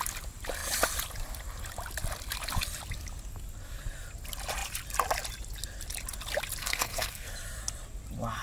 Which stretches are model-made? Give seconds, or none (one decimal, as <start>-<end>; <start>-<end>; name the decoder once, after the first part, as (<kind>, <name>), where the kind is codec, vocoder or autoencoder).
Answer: 6.6-7.3 (codec, SNAC)